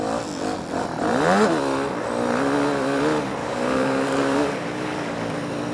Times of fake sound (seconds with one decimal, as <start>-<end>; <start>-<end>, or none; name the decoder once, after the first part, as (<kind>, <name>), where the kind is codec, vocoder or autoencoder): 3.4-5.3 (codec, DAC)